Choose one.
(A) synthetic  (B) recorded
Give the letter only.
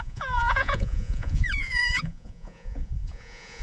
A